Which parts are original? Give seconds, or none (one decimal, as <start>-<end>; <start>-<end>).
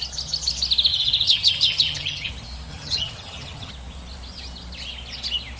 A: 0.0-0.9; 2.3-2.7; 3.7-5.6